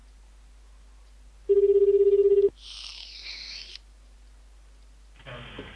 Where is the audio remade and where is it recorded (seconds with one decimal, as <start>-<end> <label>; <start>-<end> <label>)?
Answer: 0.0-5.8 recorded